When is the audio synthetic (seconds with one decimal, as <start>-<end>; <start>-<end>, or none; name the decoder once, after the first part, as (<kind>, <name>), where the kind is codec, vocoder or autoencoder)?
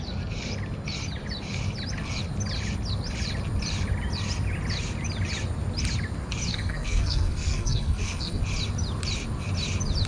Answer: 6.5-8.4 (codec, SNAC)